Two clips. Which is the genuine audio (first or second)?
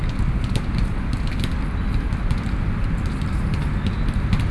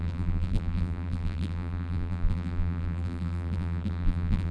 first